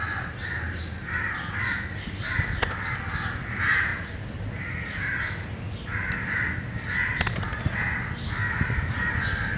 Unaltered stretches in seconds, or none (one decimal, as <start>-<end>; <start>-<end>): 0.0-9.6

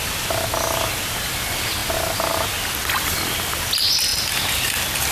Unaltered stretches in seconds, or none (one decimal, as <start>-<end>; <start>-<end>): 0.0-5.1

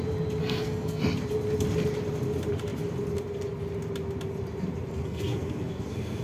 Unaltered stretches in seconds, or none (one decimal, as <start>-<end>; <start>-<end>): 0.0-0.4; 1.0-5.0

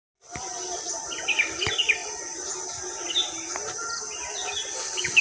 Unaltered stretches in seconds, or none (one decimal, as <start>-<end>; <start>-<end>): 0.0-5.2

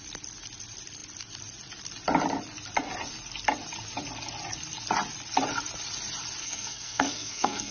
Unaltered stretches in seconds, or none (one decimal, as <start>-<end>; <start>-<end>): 0.0-6.4